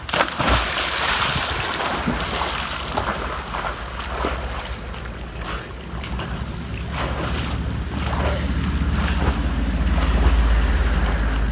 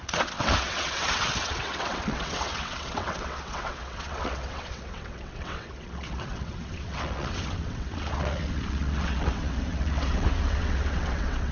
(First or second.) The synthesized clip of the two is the second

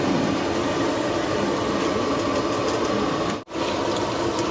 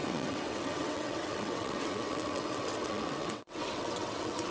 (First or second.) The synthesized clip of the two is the second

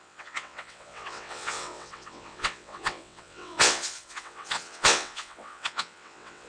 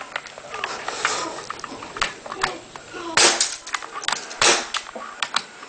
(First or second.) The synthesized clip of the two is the first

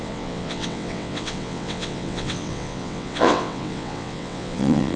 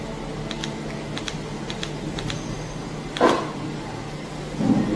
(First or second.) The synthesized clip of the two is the first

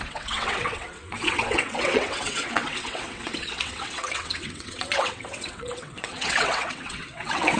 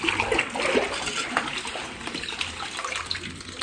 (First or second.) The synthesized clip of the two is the first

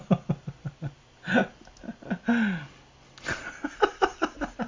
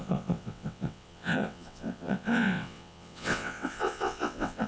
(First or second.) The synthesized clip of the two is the second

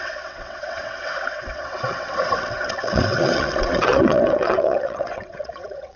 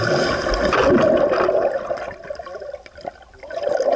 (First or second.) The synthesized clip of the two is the first